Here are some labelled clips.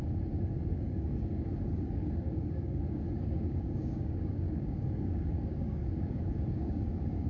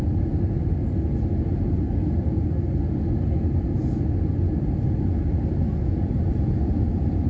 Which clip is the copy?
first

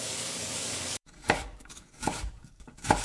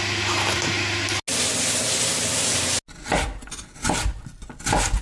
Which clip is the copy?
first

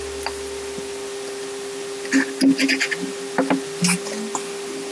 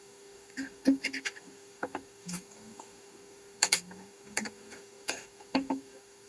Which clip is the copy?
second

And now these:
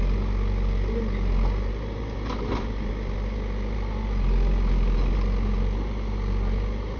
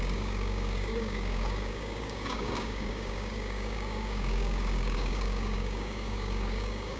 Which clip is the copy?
second